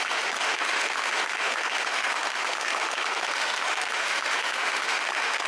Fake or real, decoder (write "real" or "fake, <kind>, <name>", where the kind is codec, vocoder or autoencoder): fake, autoencoder, DAC-VAE